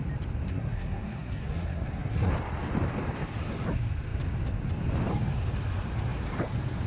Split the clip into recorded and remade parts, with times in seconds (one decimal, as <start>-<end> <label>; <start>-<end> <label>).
0.0-0.5 recorded; 0.5-2.3 remade; 2.3-6.9 recorded